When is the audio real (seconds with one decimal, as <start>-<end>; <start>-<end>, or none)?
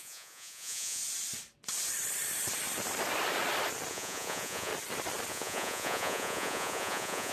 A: 1.0-3.9; 4.7-5.3